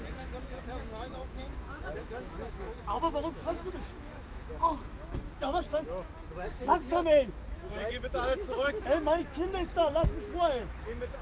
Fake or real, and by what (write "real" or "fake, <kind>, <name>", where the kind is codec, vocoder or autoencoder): fake, autoencoder, DAC-VAE